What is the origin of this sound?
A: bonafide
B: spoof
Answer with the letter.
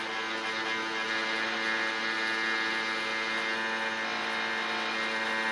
A